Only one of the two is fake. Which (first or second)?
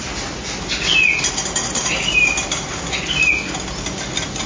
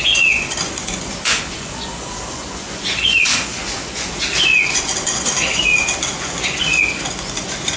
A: second